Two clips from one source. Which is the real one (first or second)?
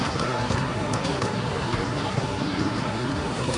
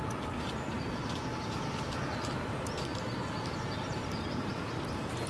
second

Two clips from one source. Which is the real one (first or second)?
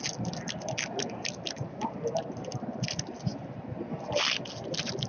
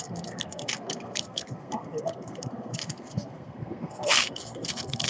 first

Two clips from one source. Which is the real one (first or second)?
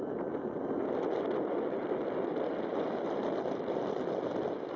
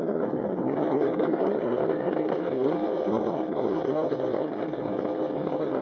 first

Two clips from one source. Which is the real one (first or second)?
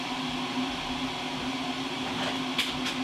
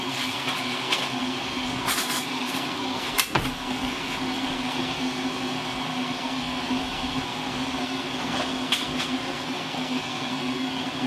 first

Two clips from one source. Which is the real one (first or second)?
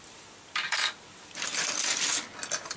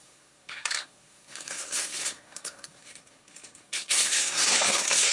first